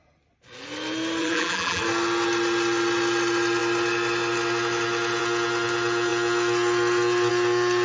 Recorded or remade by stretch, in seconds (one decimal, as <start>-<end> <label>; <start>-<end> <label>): 0.0-1.2 recorded; 1.2-1.8 remade; 1.8-7.8 recorded